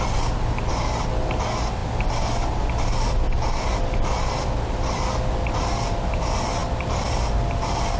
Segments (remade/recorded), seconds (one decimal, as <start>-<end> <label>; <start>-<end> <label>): 0.0-8.0 recorded

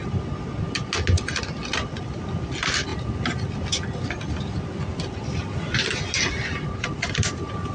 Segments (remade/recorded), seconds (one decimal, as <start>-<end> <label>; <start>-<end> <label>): 0.0-7.7 recorded

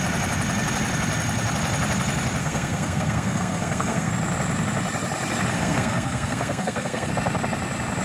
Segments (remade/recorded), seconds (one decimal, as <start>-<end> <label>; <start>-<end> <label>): 0.0-2.4 recorded; 2.4-4.1 remade; 4.1-5.5 recorded; 5.5-7.1 remade; 7.1-8.0 recorded

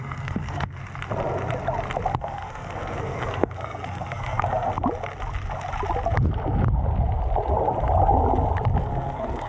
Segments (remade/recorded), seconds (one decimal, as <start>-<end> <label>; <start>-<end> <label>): 0.0-0.8 remade; 0.8-2.2 recorded; 2.2-4.7 remade; 4.7-8.8 recorded; 8.8-9.5 remade

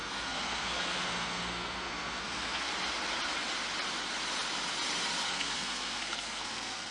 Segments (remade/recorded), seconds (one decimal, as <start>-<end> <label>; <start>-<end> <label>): 0.0-2.7 remade; 2.7-5.2 recorded; 5.2-6.9 remade

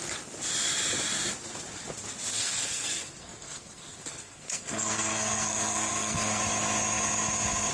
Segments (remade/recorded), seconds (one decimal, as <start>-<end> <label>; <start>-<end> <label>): 0.0-2.3 recorded; 2.3-6.4 remade; 6.4-7.7 recorded

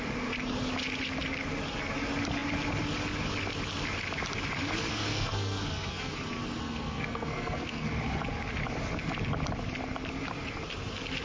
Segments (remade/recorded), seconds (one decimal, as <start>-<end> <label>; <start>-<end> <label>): 0.0-4.9 recorded; 4.9-6.1 remade; 6.1-6.6 recorded; 6.6-7.9 remade; 7.9-11.2 recorded